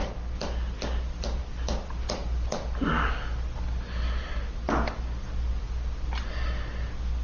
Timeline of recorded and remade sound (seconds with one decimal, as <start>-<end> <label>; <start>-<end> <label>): 0.0-7.2 recorded